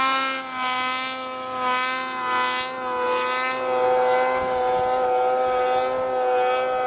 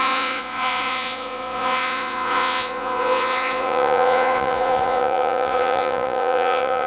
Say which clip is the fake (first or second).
second